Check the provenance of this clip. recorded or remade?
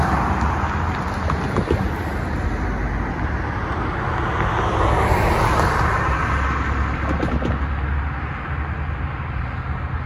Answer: recorded